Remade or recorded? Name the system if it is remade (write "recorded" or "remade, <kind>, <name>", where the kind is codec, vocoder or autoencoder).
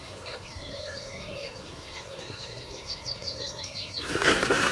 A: remade, codec, SNAC